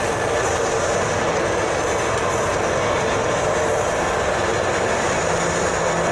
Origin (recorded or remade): recorded